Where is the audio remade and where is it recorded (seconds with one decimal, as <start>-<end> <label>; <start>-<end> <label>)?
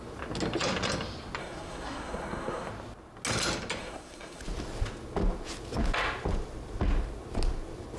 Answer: 0.0-1.4 recorded; 1.4-2.7 remade; 2.7-3.8 recorded; 3.8-4.4 remade; 4.4-8.0 recorded